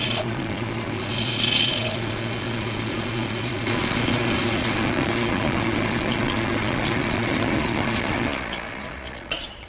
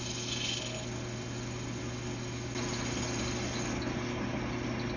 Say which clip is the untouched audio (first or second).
second